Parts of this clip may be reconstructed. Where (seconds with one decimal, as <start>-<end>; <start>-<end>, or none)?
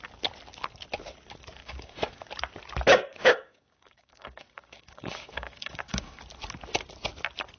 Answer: 1.6-2.3; 3.1-6.2